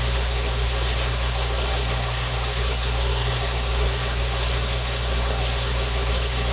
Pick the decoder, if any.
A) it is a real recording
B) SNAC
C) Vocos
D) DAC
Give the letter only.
B